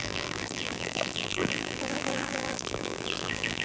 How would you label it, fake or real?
fake